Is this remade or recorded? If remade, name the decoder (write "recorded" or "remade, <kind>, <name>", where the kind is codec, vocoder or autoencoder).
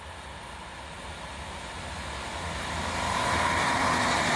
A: recorded